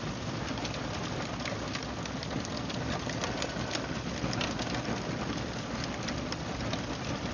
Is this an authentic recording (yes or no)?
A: yes